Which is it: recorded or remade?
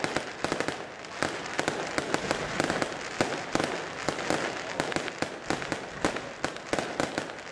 recorded